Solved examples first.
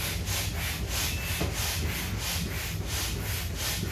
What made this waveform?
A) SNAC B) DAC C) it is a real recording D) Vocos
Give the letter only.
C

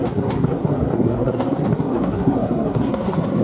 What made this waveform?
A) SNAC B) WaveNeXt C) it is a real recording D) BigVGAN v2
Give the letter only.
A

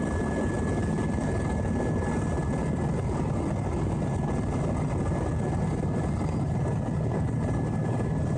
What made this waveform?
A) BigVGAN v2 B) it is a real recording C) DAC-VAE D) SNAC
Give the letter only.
B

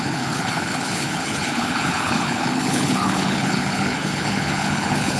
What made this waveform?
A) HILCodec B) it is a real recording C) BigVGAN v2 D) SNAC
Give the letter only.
A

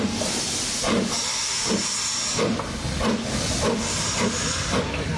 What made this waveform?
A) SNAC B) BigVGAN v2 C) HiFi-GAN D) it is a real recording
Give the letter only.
B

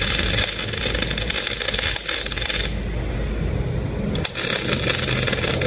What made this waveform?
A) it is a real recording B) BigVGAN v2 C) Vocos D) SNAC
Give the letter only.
A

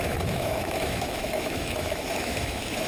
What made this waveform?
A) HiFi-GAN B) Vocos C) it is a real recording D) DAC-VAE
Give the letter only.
D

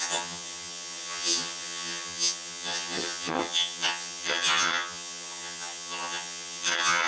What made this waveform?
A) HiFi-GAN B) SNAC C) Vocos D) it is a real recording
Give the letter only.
A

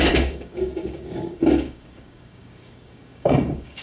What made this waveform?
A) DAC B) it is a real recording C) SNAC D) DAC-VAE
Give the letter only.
A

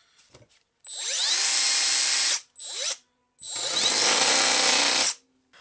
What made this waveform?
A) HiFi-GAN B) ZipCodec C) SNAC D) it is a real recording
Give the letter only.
D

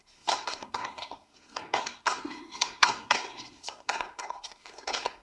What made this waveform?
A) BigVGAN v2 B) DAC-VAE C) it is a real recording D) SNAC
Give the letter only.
D